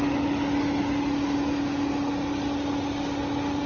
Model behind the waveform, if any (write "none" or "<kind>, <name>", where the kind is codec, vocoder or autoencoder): none